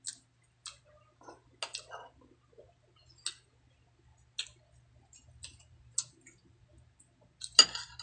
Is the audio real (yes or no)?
yes